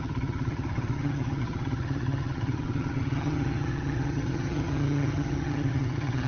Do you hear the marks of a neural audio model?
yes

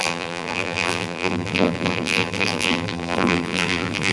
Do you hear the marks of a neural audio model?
yes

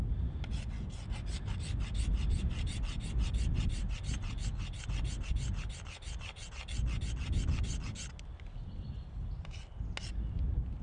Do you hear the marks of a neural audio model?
no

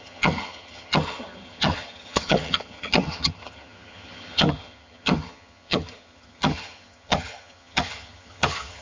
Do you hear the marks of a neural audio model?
yes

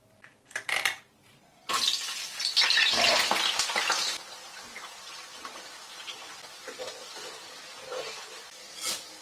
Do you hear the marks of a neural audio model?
no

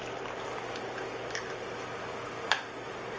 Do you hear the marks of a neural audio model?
no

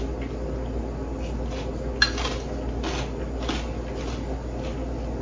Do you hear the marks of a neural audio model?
no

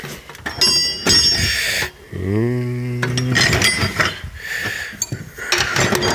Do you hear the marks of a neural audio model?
no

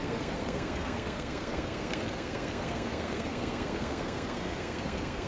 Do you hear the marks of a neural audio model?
yes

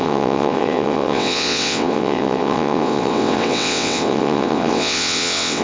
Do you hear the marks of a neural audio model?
yes